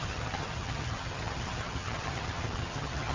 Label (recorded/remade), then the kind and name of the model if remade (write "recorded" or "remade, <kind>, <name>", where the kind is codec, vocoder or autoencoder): remade, vocoder, HiFi-GAN